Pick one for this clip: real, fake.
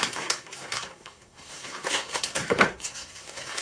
fake